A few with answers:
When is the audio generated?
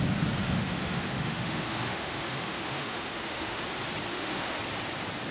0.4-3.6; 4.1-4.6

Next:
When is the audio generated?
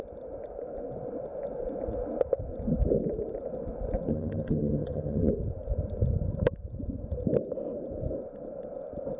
4.1-5.3